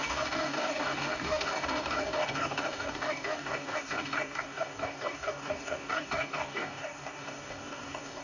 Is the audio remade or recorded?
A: remade